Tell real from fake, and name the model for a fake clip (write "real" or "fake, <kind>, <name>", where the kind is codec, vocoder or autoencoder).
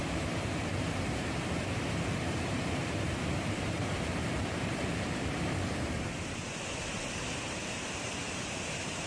fake, vocoder, BigVGAN v2